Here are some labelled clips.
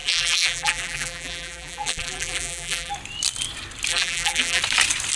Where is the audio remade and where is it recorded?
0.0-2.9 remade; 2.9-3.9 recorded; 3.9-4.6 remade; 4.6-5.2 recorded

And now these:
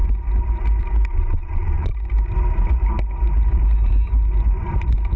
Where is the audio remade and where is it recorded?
0.0-1.1 recorded; 1.1-1.9 remade; 1.9-5.2 recorded

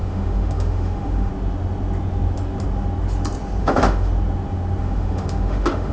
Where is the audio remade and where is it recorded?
0.0-1.3 remade; 1.3-3.6 recorded; 3.6-4.1 remade; 4.1-4.8 recorded; 4.8-5.9 remade